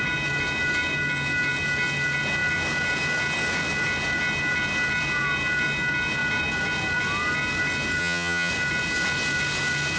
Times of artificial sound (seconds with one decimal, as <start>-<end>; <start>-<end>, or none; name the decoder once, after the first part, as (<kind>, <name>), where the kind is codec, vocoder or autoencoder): 8.0-8.5 (vocoder, HiFi-GAN)